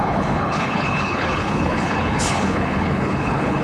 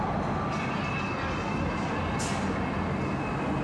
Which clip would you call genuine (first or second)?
second